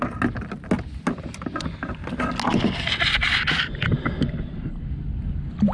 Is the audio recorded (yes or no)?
yes